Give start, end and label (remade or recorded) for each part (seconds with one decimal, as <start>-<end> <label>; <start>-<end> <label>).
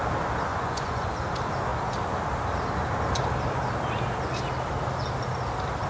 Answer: 0.0-0.5 recorded; 0.5-1.1 remade; 1.1-5.9 recorded